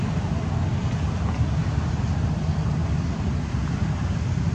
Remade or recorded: recorded